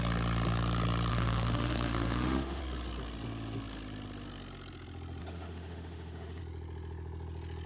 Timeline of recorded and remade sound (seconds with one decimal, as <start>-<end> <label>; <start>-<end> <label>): 0.0-1.1 recorded; 1.1-2.6 remade; 2.6-5.2 recorded; 5.2-6.4 remade; 6.4-7.7 recorded